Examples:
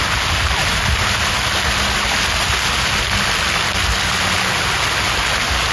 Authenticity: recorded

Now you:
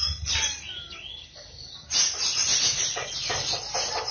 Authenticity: recorded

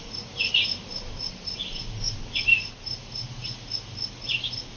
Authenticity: recorded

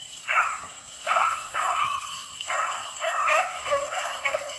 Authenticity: remade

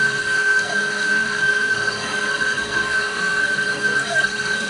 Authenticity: remade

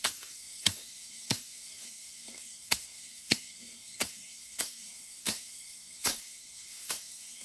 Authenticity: remade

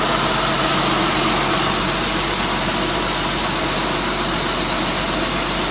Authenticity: recorded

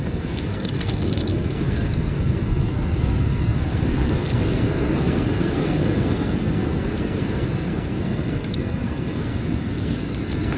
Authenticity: remade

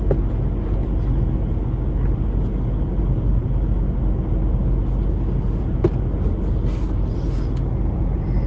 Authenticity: recorded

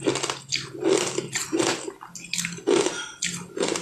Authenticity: recorded